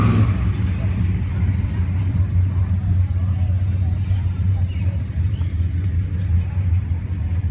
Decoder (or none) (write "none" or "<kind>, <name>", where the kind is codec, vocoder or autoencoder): none